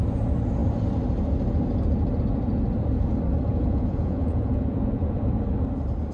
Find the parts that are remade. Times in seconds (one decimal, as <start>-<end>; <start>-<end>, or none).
3.5-5.3